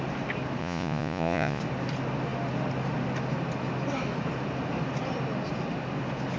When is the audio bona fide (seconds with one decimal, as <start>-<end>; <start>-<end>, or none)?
0.0-0.6; 1.6-6.4